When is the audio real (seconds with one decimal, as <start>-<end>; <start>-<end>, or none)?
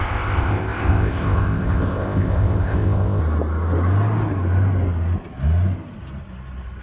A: 3.2-6.8